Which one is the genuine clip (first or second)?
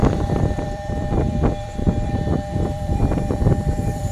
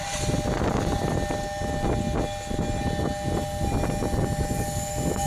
second